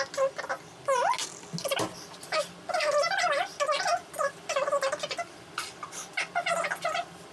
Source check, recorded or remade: recorded